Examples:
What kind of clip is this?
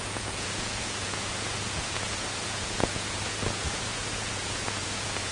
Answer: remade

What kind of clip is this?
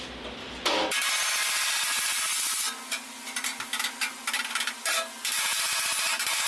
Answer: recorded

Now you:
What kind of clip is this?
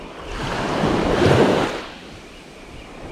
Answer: remade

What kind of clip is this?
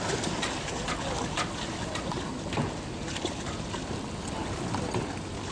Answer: recorded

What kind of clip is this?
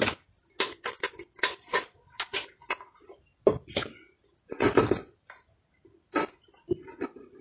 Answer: recorded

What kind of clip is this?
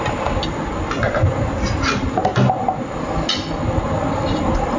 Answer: recorded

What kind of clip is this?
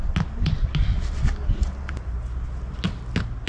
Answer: recorded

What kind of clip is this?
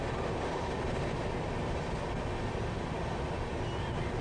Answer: recorded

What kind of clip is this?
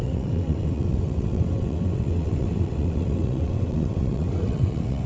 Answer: remade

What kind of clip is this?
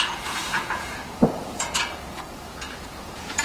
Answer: remade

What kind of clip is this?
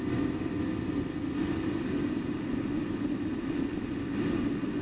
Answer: recorded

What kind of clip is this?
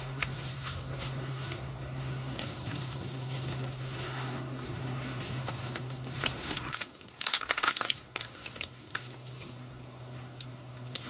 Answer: remade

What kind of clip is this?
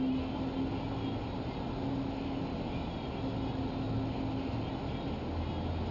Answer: recorded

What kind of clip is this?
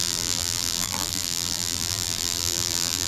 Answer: remade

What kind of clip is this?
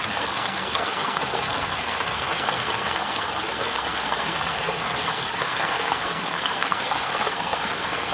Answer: remade